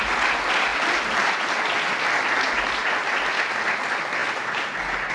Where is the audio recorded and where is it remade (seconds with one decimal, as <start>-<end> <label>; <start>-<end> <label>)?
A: 0.0-5.1 recorded